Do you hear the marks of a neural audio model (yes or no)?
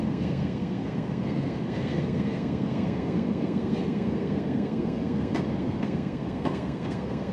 yes